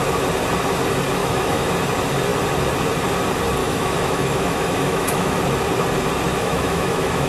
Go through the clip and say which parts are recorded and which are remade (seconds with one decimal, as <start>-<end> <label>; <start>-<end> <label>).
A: 0.0-1.2 recorded; 1.2-1.7 remade; 1.7-3.6 recorded; 3.6-5.4 remade; 5.4-6.3 recorded; 6.3-7.3 remade